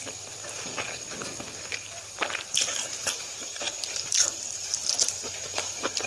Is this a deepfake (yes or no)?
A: yes